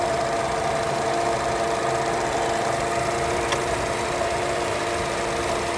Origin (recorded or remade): recorded